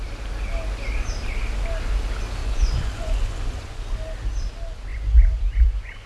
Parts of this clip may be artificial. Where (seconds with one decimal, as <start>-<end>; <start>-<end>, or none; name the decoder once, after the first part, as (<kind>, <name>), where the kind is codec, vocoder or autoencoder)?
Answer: 2.4-3.8 (vocoder, Vocos); 4.9-6.1